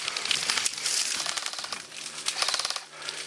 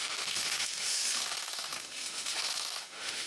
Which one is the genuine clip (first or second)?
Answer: first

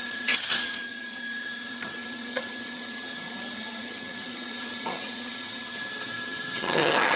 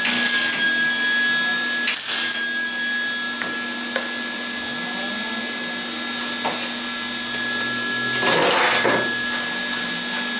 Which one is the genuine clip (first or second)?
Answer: second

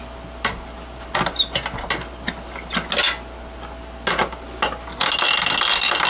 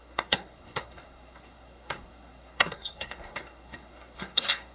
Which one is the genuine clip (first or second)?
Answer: first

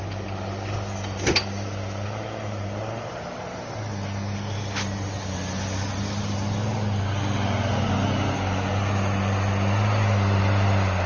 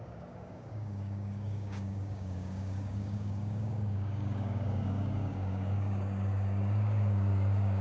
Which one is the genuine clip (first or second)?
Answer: first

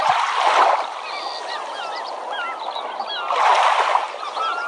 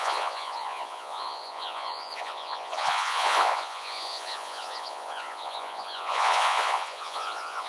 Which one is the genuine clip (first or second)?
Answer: first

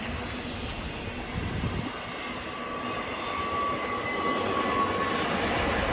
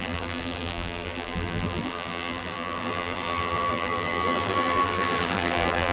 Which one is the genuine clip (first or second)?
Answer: first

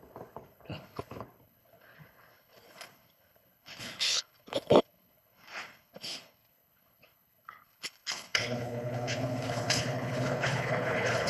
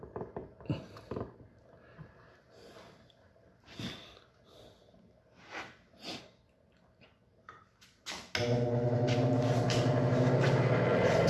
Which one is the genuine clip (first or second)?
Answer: second